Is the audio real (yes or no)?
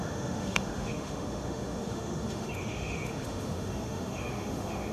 no